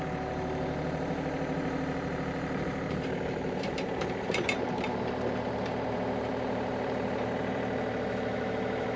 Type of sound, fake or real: fake